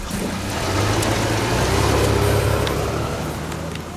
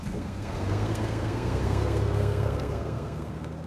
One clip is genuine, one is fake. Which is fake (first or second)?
second